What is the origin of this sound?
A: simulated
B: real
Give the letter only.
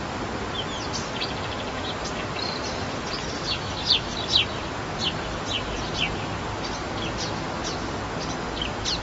B